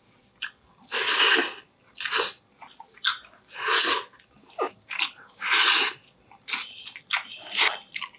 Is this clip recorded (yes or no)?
yes